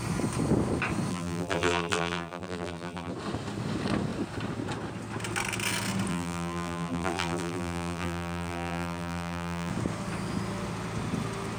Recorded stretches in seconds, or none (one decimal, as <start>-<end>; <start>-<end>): 0.0-1.1; 3.1-6.1; 9.7-11.6